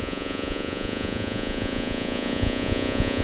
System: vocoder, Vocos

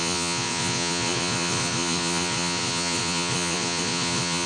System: vocoder, Vocos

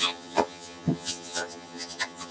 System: vocoder, HiFi-GAN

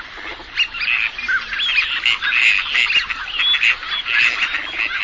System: none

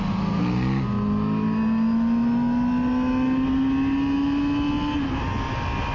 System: none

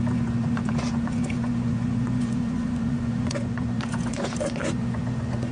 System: vocoder, Vocos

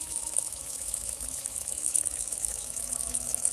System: autoencoder, DAC-VAE